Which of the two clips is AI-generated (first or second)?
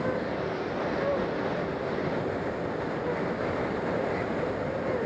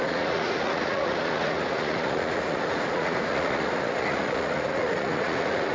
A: second